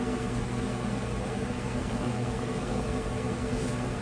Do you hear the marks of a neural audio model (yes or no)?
yes